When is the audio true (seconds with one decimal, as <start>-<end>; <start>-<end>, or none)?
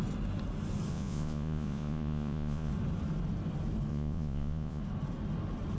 0.0-0.9; 2.7-3.9; 4.8-5.8